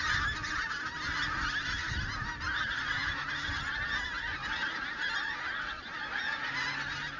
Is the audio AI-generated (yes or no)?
no